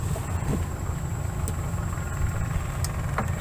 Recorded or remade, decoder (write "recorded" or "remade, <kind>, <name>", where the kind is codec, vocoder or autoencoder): recorded